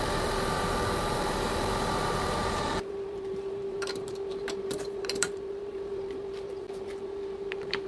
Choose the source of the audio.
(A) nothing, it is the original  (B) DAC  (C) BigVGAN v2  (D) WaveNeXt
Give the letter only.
C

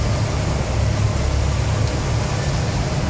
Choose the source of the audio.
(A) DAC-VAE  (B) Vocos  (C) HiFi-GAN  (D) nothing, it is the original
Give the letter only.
D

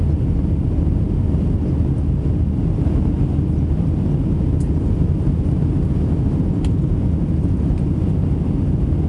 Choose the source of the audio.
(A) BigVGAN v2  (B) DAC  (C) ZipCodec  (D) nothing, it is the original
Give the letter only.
D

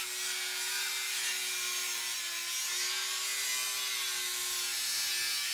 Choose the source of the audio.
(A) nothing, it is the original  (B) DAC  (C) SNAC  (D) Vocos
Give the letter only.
A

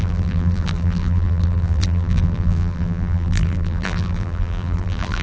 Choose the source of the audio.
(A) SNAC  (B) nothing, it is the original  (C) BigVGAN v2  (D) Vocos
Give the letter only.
C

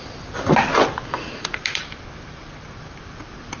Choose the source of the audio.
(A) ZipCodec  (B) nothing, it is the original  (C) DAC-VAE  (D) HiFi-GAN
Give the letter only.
B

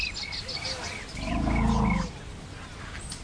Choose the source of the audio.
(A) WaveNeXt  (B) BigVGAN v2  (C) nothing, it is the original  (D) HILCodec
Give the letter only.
C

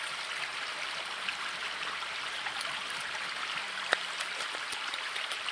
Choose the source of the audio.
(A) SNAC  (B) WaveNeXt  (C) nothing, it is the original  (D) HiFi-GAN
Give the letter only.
C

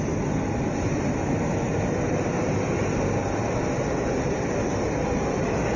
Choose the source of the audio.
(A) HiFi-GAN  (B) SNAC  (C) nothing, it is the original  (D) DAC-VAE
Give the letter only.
C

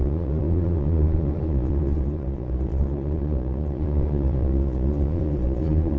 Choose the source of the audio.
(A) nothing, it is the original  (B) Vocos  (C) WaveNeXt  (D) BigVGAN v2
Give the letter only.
B